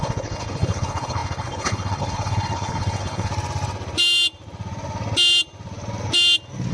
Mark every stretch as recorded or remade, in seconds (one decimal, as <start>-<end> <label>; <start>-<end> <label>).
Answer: 0.0-3.3 remade; 3.3-6.7 recorded